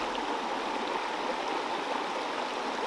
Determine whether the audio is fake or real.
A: real